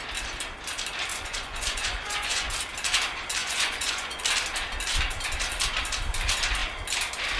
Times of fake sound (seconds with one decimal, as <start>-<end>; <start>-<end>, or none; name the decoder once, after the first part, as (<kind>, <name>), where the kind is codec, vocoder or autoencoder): 1.1-2.5 (vocoder, Vocos); 3.4-4.2